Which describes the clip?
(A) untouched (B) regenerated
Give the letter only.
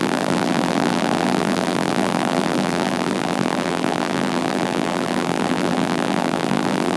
B